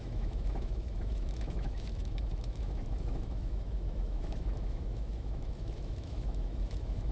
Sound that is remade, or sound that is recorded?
remade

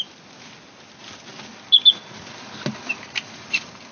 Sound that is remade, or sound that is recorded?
recorded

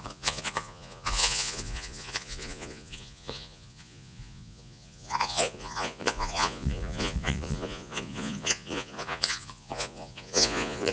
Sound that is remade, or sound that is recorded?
remade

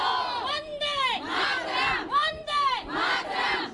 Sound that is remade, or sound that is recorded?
recorded